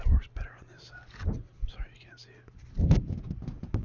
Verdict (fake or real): real